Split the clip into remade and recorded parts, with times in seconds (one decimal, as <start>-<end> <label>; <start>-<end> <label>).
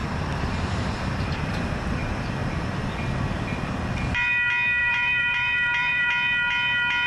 0.0-1.2 remade; 1.2-2.4 recorded; 2.4-2.9 remade; 2.9-4.8 recorded; 4.8-6.1 remade; 6.1-7.1 recorded